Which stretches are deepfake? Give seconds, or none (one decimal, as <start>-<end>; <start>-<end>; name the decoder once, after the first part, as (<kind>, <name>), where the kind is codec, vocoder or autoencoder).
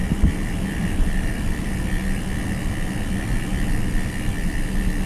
0.0-1.7 (vocoder, BigVGAN v2)